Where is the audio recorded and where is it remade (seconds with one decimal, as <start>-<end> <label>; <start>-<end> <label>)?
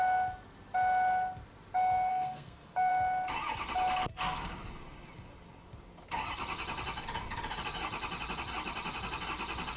0.0-2.1 recorded; 2.1-2.9 remade; 2.9-9.8 recorded